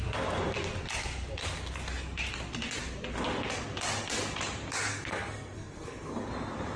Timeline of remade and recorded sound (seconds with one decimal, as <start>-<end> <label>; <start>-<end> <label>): 0.0-4.9 recorded; 4.9-6.3 remade; 6.3-6.8 recorded